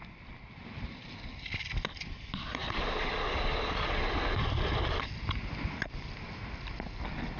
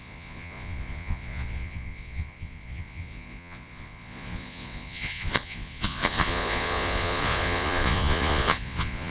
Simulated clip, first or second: second